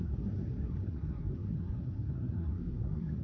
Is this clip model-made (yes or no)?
yes